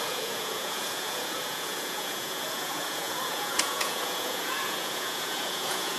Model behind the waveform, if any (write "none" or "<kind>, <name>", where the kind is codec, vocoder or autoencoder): vocoder, Vocos